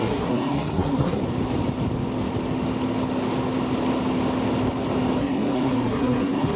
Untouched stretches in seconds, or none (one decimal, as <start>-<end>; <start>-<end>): 1.2-5.2